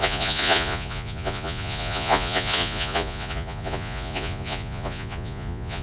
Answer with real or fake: fake